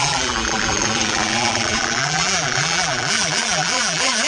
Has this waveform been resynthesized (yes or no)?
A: yes